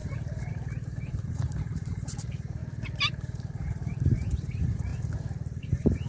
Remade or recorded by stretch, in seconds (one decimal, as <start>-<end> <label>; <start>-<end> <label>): 0.0-2.6 remade; 2.6-3.1 recorded; 3.1-4.9 remade; 4.9-5.6 recorded; 5.6-6.1 remade